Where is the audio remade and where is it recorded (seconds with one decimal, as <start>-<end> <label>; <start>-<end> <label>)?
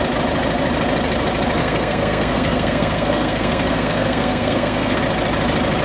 0.0-1.6 recorded; 1.6-5.0 remade; 5.0-5.8 recorded